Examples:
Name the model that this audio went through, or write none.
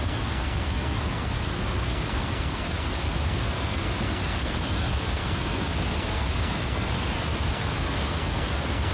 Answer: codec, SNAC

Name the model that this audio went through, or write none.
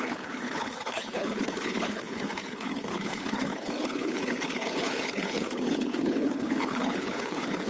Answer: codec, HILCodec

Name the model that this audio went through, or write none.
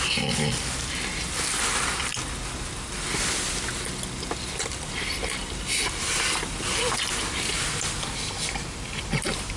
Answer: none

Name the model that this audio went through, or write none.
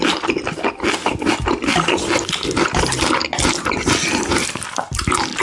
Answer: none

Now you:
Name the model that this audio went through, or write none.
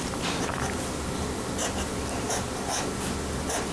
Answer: none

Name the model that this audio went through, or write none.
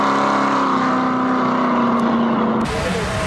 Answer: none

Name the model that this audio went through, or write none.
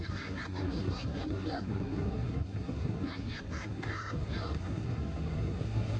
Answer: codec, SNAC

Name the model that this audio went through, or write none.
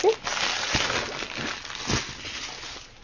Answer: none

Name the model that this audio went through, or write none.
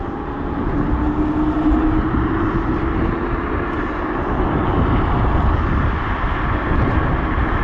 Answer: none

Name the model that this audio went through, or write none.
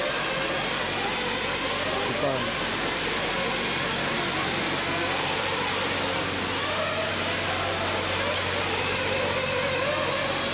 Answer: none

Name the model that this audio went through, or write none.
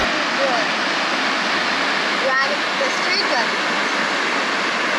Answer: none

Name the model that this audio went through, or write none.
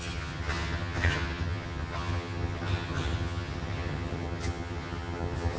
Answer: vocoder, HiFi-GAN